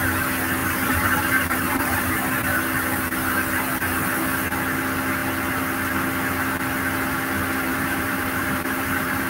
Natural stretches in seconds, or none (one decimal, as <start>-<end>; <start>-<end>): 0.0-0.6; 2.1-7.7